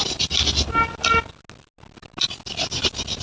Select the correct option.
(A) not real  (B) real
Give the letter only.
B